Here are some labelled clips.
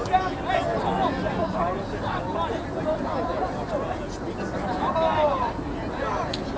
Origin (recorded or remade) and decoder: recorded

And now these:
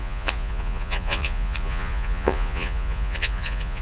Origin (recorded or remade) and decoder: remade, vocoder, Vocos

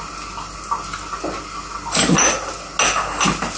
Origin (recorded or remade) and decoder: recorded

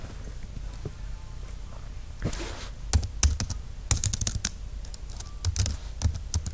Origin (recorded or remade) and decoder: recorded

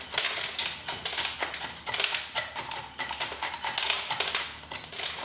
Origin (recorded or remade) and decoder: recorded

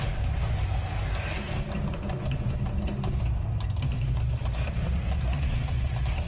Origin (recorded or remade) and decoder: recorded